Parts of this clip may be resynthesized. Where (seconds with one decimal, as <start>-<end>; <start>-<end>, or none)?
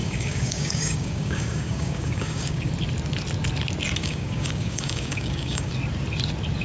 0.0-2.7; 4.0-5.7